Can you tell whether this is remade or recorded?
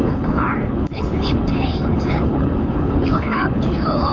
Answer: remade